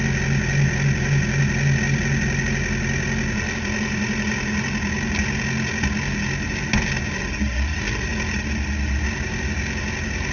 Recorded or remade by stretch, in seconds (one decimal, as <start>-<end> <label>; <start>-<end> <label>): 0.0-10.3 recorded